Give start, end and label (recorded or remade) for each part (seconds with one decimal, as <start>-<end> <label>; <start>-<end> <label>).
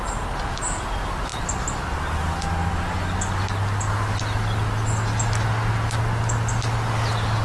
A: 0.0-7.4 recorded